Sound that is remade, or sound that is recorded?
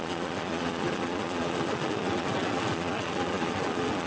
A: remade